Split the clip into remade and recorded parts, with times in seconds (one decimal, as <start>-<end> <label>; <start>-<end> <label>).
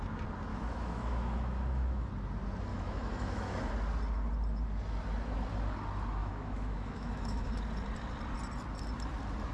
0.0-0.5 recorded; 0.5-2.1 remade; 2.1-2.7 recorded; 2.7-3.7 remade; 3.7-6.2 recorded; 6.2-7.6 remade; 7.6-9.5 recorded